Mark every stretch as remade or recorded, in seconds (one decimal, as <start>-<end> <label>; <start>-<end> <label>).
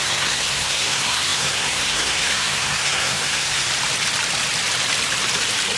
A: 0.0-3.7 remade; 3.7-5.8 recorded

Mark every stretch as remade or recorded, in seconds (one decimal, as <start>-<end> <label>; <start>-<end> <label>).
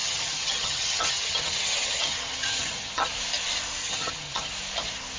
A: 0.0-3.1 remade; 3.1-3.8 recorded; 3.8-4.5 remade; 4.5-5.2 recorded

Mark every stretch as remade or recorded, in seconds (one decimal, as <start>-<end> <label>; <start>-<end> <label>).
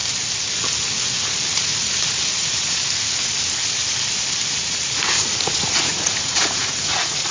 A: 0.0-2.3 recorded; 2.3-2.8 remade; 2.8-4.5 recorded; 4.5-7.3 remade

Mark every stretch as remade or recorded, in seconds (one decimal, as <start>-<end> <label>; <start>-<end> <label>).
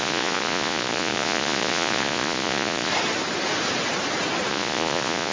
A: 0.0-2.9 remade; 2.9-4.5 recorded; 4.5-5.3 remade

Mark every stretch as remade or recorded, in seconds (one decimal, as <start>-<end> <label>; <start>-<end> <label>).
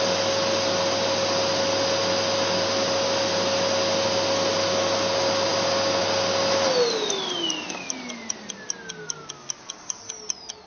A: 0.0-10.7 recorded